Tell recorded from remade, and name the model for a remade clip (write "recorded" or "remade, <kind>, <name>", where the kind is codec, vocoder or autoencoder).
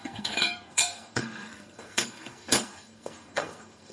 remade, codec, SNAC